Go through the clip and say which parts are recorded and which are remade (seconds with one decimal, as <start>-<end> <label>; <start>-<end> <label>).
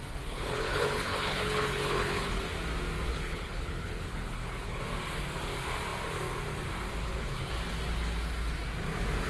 0.0-2.4 remade; 2.4-3.1 recorded; 3.1-4.8 remade; 4.8-7.0 recorded; 7.0-7.5 remade; 7.5-9.3 recorded